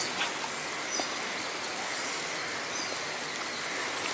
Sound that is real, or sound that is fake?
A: real